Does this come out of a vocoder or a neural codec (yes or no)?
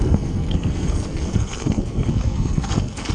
yes